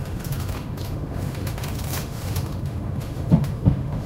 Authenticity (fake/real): fake